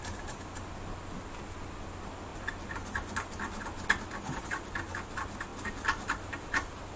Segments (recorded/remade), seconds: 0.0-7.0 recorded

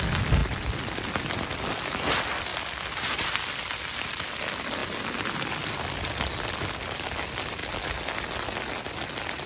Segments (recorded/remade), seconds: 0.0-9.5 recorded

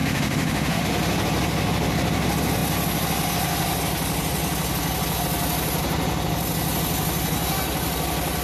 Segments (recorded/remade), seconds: 0.0-0.8 remade; 0.8-8.4 recorded